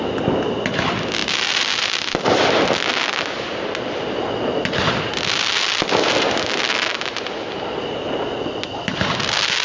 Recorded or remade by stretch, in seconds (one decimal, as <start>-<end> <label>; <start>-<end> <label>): 0.0-9.6 recorded